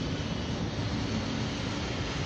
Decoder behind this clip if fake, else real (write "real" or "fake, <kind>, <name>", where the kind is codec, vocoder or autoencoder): real